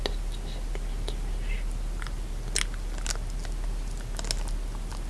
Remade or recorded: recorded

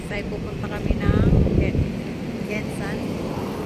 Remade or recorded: remade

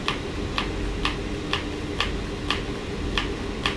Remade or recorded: recorded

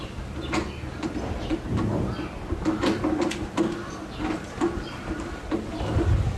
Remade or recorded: recorded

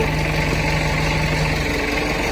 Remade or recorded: recorded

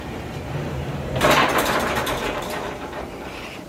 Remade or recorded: remade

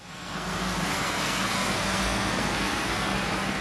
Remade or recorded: remade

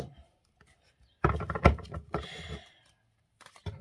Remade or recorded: recorded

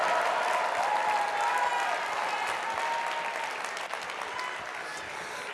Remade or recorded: recorded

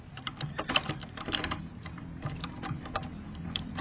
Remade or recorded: remade